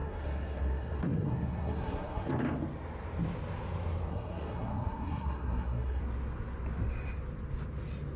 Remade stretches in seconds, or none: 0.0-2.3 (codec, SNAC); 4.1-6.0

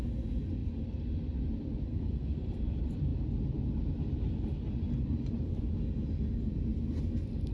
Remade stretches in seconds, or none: 1.9-2.6 (codec, SNAC)

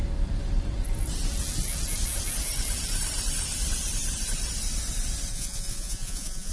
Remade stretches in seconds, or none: 5.3-6.5 (vocoder, Vocos)

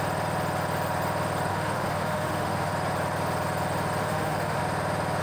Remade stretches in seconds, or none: 1.5-2.7 (autoencoder, DAC-VAE); 4.0-4.6

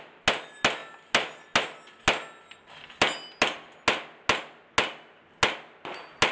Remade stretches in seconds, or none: none

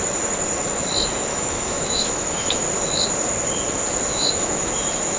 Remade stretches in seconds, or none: 1.3-2.6 (autoencoder, DAC-VAE); 4.1-4.7